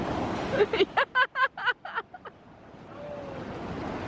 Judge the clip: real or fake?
real